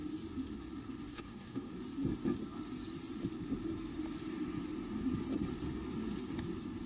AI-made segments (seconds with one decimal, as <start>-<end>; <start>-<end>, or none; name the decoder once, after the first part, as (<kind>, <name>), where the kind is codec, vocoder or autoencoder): 1.1-1.7 (codec, SNAC)